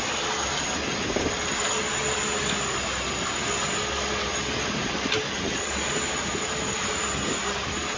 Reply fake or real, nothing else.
real